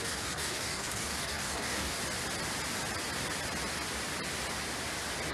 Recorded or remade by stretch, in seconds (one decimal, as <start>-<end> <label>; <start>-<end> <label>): 0.0-2.0 remade; 2.0-5.3 recorded